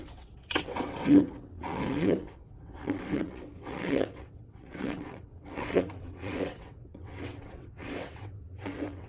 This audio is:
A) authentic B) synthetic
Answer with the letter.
B